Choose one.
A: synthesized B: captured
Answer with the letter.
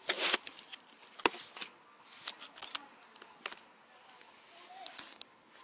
B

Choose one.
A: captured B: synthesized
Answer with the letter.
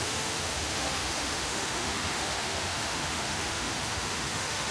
B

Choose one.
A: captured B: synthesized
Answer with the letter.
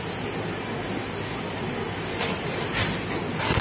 A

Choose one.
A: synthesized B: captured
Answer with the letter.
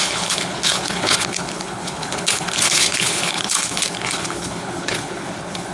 A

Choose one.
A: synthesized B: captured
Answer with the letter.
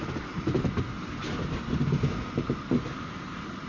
B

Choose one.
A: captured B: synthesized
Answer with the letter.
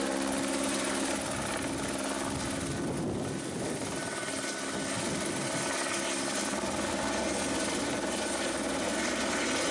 A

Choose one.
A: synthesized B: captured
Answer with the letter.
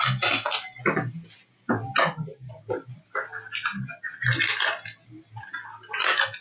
B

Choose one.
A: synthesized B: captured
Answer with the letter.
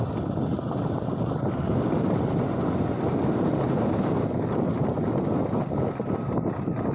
B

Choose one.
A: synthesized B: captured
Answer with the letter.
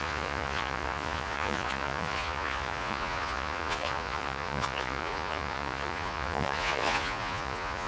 A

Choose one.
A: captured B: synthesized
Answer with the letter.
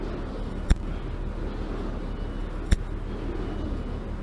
A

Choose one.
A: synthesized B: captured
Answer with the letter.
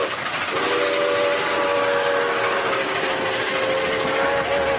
B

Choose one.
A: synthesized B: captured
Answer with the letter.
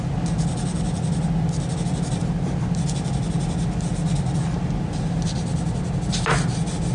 B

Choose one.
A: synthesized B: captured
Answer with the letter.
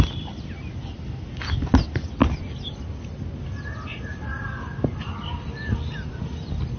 B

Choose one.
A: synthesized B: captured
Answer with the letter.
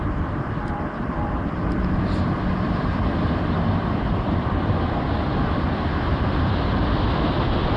A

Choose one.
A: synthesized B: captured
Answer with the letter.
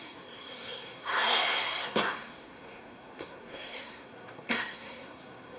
A